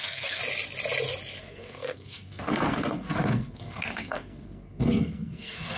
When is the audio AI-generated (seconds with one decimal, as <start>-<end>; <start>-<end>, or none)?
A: 0.0-0.4; 1.4-5.8